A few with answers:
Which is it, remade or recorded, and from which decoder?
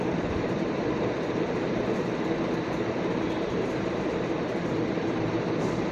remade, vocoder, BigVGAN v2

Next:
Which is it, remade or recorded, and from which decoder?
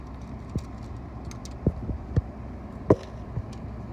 recorded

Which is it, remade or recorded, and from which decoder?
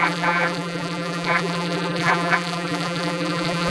remade, vocoder, BigVGAN v2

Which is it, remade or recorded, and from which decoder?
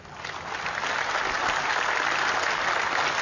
recorded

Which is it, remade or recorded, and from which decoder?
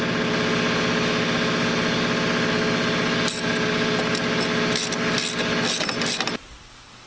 recorded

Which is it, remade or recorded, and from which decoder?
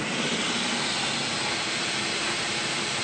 remade, vocoder, BigVGAN v2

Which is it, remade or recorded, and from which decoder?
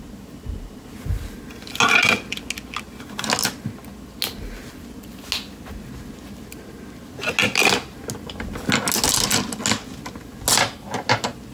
recorded